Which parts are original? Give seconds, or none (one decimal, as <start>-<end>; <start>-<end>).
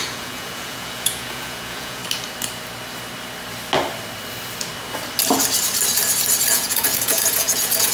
2.0-6.4